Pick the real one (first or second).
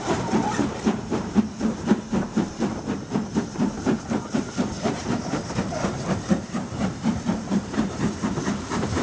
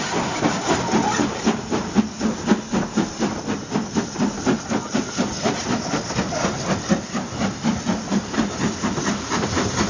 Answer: second